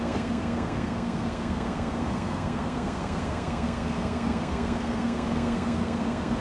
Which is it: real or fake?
fake